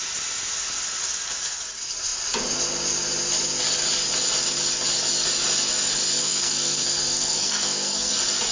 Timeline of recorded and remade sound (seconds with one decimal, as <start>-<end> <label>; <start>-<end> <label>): 0.0-6.2 recorded; 6.2-8.1 remade; 8.1-8.5 recorded